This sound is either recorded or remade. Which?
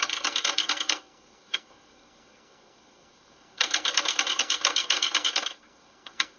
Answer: remade